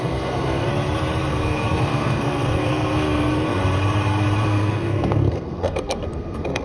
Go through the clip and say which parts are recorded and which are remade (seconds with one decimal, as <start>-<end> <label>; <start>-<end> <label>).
0.0-0.7 remade; 0.7-1.3 recorded; 1.3-3.6 remade; 3.6-4.4 recorded; 4.4-6.6 remade